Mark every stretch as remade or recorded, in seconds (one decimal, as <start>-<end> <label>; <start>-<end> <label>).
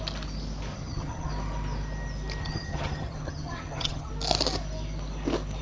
0.0-0.7 recorded; 0.7-1.3 remade; 1.3-2.4 recorded; 2.4-4.1 remade; 4.1-5.6 recorded